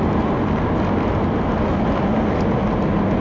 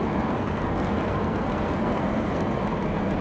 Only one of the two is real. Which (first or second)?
first